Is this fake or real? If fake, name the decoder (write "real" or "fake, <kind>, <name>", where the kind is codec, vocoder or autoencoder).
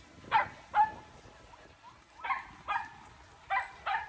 real